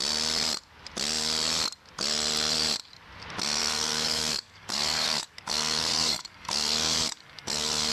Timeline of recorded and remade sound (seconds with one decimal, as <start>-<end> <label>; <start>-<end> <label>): 0.0-3.6 recorded; 3.6-7.9 remade

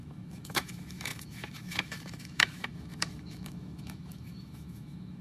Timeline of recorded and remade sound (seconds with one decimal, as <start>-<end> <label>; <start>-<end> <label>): 0.0-5.2 remade

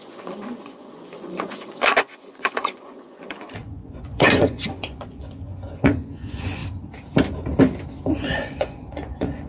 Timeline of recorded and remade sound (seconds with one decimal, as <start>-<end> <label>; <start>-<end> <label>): 0.0-6.6 remade; 6.6-8.1 recorded; 8.1-9.5 remade

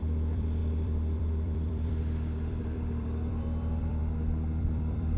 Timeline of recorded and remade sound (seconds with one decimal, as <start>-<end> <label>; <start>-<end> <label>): 0.0-4.0 remade; 4.0-4.6 recorded; 4.6-5.2 remade

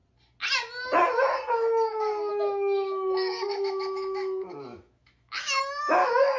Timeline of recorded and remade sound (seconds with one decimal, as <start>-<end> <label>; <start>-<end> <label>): 0.0-2.3 recorded; 2.3-6.4 remade